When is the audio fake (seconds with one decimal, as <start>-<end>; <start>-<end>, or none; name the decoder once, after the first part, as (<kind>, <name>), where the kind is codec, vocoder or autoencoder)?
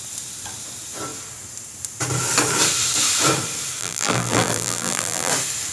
3.8-5.3 (vocoder, BigVGAN v2)